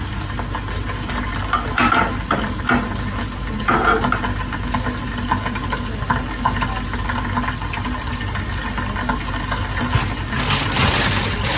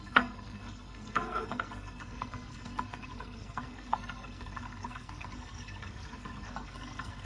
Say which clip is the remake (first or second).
second